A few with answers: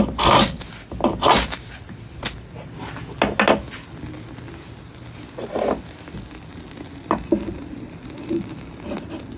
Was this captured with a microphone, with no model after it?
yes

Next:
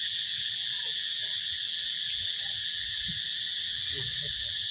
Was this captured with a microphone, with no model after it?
no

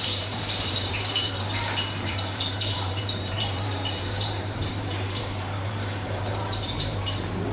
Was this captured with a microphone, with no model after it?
no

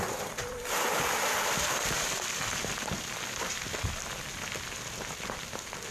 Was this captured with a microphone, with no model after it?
no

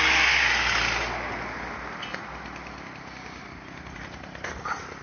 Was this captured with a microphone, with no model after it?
yes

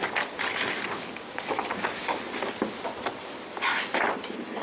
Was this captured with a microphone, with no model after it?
yes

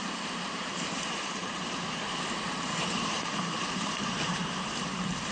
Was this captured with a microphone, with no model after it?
no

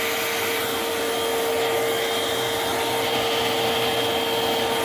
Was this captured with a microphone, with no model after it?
yes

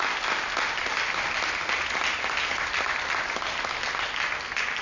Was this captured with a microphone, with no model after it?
yes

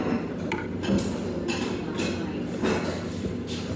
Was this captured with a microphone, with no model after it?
yes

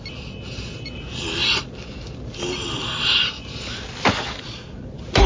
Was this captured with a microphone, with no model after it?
yes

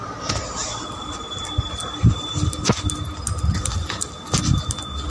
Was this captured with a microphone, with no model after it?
yes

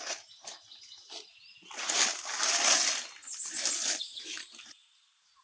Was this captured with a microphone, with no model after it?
yes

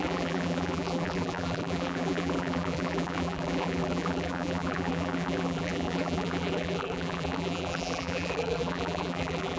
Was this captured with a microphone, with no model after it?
no